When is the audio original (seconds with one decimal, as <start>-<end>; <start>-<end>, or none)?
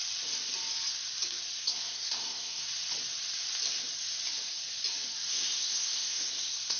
0.0-1.6; 2.7-5.3